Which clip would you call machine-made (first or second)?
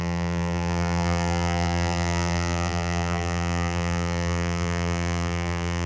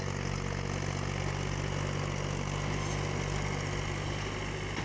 first